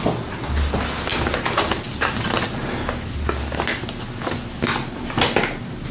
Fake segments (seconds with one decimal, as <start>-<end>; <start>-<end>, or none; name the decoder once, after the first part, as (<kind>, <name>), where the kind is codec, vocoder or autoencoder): none